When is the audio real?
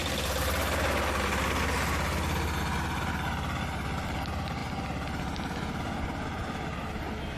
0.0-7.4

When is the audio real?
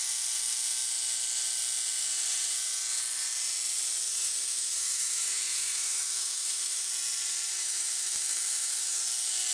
0.0-4.1; 6.9-7.5; 9.0-9.5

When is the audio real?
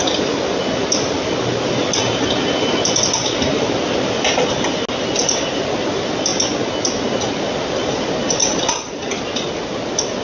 0.0-10.2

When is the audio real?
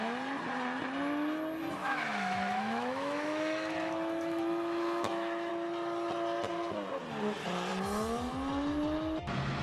0.0-1.8; 5.5-9.6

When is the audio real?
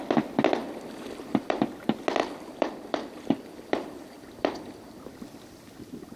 0.0-0.6; 1.6-2.2; 5.0-6.2